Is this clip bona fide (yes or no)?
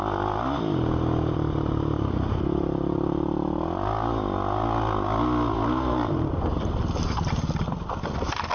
yes